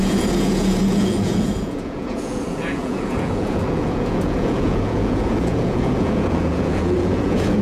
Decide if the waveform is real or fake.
fake